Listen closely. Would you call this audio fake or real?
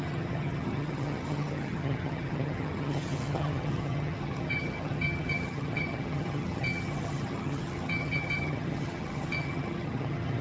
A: fake